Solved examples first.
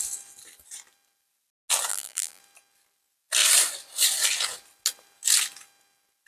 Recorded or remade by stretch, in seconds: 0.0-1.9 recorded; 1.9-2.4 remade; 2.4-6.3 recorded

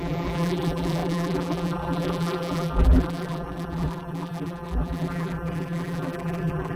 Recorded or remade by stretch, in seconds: 0.0-6.8 remade

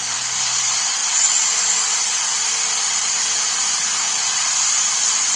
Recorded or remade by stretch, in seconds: 0.0-5.4 recorded

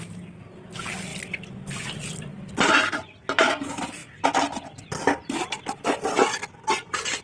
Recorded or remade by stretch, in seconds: 0.0-1.1 recorded; 1.1-2.8 remade; 2.8-4.0 recorded; 4.0-7.2 remade

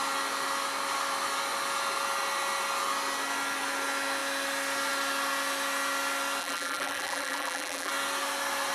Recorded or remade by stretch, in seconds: 0.0-6.4 recorded; 6.4-7.9 remade; 7.9-8.7 recorded

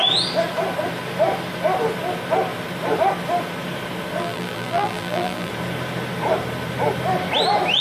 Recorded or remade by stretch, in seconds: 0.0-4.2 recorded; 4.2-5.5 remade; 5.5-7.8 recorded

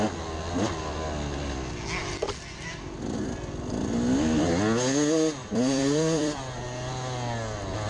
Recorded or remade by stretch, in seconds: 0.0-5.4 recorded; 5.4-6.4 remade; 6.4-7.9 recorded

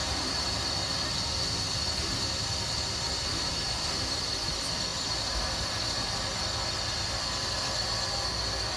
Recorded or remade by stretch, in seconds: 0.0-0.6 remade; 0.6-3.3 recorded; 3.3-4.3 remade; 4.3-4.9 recorded; 4.9-6.1 remade; 6.1-8.8 recorded